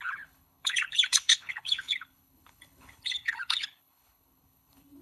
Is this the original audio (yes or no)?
no